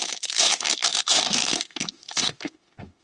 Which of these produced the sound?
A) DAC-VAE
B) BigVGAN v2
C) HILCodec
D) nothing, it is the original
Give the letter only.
A